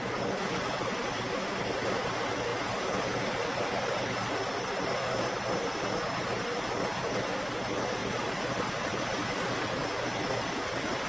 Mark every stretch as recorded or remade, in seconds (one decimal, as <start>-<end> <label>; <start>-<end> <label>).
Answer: 0.0-2.5 recorded; 2.5-5.4 remade; 5.4-8.0 recorded; 8.0-8.9 remade; 8.9-11.1 recorded